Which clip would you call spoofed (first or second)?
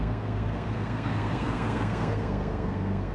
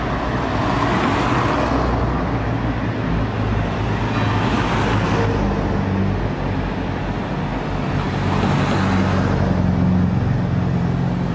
first